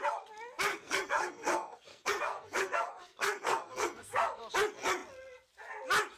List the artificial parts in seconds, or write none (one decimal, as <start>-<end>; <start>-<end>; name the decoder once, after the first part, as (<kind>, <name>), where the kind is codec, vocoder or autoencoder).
0.7-4.4 (codec, SNAC)